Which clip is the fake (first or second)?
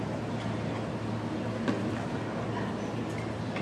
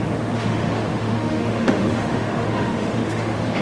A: second